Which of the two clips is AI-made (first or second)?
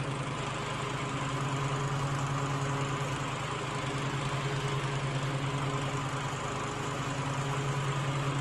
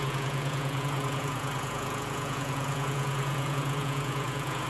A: second